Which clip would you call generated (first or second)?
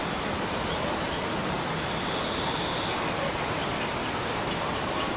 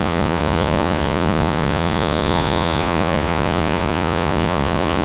second